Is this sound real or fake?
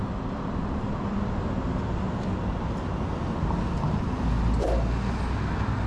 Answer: real